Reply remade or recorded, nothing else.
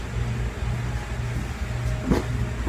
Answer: recorded